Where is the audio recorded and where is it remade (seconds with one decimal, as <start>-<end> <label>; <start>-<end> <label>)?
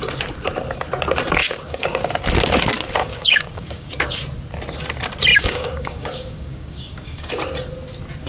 0.0-1.4 recorded; 1.4-2.1 remade; 2.1-3.0 recorded; 3.0-3.9 remade; 3.9-5.3 recorded; 5.3-7.3 remade; 7.3-8.3 recorded